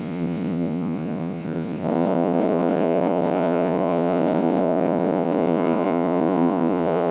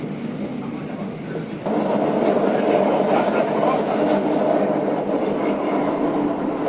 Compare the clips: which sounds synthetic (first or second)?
first